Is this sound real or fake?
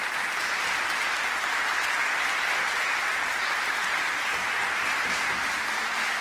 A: real